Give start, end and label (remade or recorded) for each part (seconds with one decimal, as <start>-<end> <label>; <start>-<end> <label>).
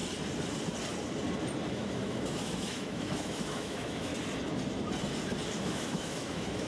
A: 0.0-1.7 recorded; 1.7-4.1 remade; 4.1-5.6 recorded; 5.6-6.7 remade